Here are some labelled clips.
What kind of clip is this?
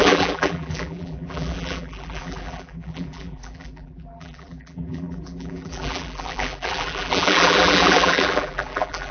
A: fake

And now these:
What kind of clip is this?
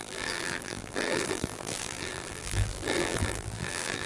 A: fake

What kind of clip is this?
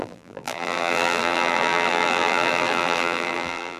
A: fake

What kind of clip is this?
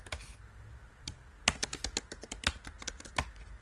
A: real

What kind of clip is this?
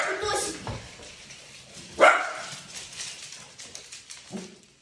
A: fake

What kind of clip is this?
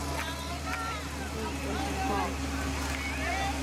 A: real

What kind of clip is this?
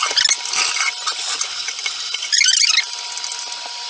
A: real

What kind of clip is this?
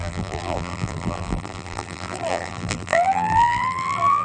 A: fake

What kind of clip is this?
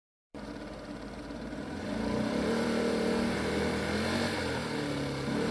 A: fake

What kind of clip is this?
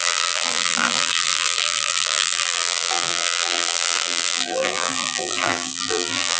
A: fake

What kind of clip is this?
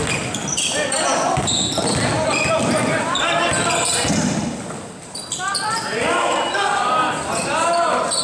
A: fake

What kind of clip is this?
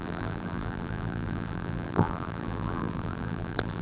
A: fake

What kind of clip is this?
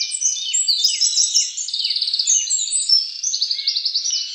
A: real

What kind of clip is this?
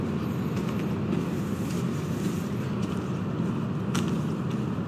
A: real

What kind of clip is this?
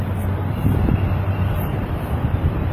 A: fake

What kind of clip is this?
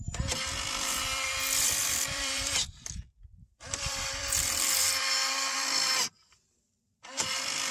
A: fake